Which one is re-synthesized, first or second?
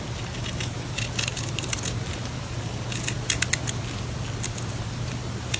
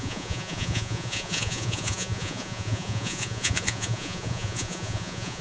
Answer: second